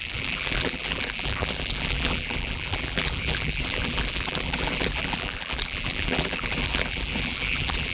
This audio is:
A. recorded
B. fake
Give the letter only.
B